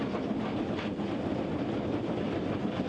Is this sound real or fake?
real